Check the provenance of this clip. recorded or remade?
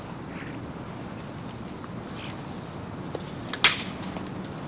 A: recorded